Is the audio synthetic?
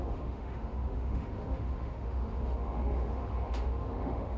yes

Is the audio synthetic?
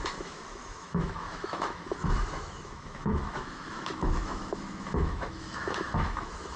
yes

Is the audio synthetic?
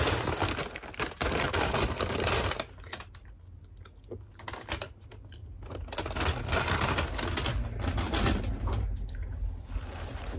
no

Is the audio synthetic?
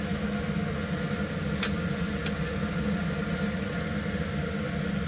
no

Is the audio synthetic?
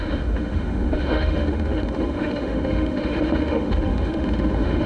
yes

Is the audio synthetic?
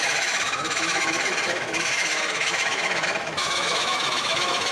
yes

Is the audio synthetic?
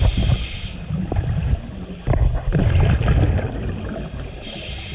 no